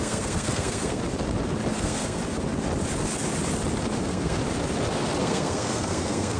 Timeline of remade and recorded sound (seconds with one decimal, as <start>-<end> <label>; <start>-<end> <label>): 0.0-1.0 remade; 1.0-1.7 recorded; 1.7-2.2 remade; 2.2-4.0 recorded; 4.0-4.4 remade; 4.4-5.2 recorded; 5.2-6.4 remade